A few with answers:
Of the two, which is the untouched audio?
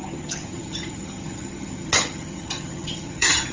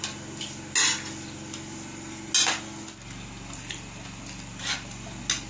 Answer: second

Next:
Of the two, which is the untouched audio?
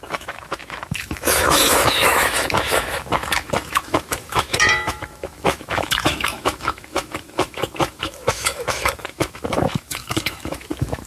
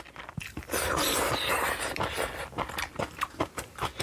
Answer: second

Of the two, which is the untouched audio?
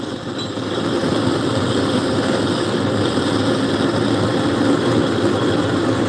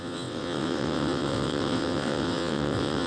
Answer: first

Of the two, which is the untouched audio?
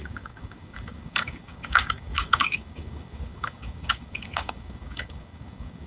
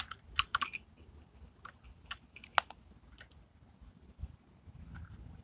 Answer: second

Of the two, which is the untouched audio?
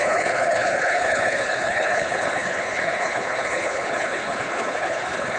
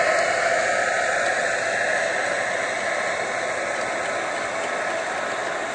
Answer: second